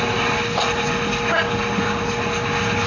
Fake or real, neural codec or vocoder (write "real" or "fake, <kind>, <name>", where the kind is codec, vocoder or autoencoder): real